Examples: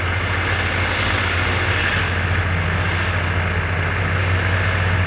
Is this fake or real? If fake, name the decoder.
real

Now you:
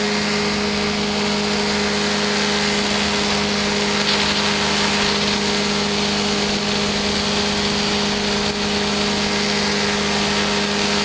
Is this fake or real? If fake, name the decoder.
real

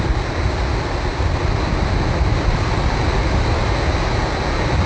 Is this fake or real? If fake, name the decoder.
real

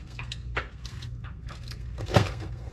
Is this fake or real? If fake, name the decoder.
fake, codec, SNAC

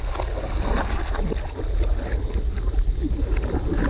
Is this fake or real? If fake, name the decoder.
real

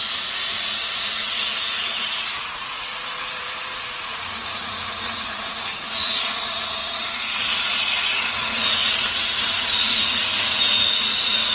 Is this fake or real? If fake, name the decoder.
fake, vocoder, Vocos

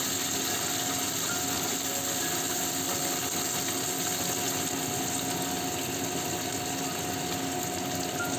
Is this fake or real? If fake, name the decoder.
real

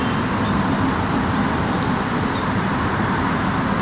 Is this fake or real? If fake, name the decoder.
real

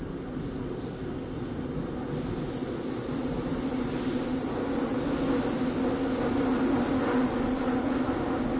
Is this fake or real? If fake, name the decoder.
real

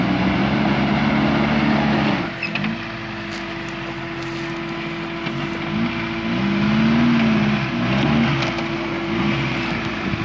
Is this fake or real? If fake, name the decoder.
real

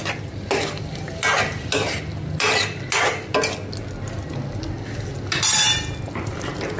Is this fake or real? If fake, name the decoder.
real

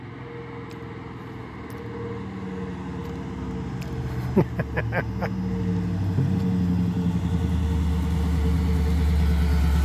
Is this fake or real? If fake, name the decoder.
real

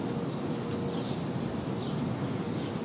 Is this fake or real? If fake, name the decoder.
real